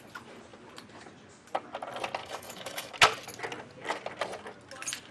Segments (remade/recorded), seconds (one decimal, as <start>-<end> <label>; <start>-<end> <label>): 0.0-2.2 recorded; 2.2-2.9 remade; 2.9-5.1 recorded

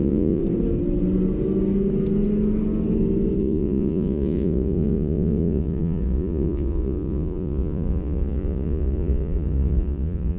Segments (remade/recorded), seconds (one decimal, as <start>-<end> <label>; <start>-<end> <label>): 0.0-0.4 remade; 0.4-3.4 recorded; 3.4-10.4 remade

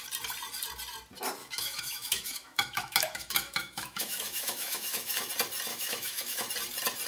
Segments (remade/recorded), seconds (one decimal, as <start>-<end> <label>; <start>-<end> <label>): 0.0-1.4 recorded; 1.4-5.3 remade; 5.3-5.7 recorded; 5.7-6.5 remade; 6.5-7.1 recorded

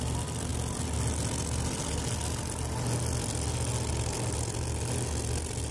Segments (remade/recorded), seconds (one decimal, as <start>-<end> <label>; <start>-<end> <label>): 0.0-5.7 recorded

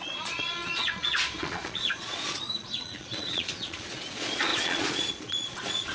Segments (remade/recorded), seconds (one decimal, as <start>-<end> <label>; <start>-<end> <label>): 0.0-5.9 remade

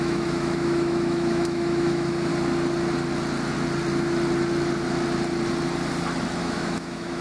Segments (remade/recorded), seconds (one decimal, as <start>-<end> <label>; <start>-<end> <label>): 0.0-2.3 remade; 2.3-6.4 recorded; 6.4-7.2 remade